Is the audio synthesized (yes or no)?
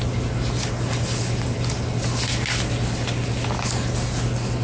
no